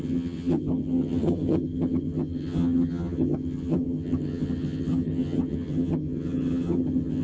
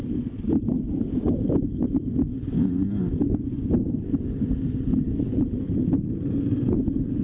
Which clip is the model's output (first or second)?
first